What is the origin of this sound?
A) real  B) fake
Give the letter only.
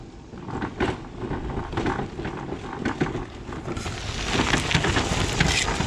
A